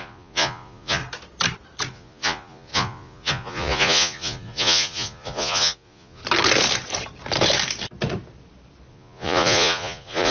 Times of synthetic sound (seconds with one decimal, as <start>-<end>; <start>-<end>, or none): 0.0-1.0; 1.9-6.2; 8.9-10.3